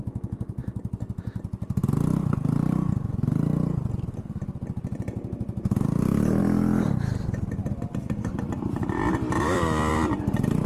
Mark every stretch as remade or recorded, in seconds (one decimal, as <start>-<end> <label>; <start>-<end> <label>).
0.0-0.6 remade; 0.6-1.1 recorded; 1.1-1.8 remade; 1.8-6.4 recorded; 6.4-10.7 remade